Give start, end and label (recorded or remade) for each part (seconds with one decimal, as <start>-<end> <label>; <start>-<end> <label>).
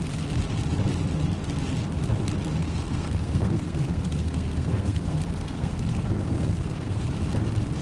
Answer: 0.0-2.6 recorded; 2.6-7.0 remade; 7.0-7.8 recorded